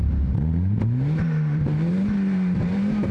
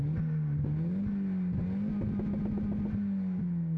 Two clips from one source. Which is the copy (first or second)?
first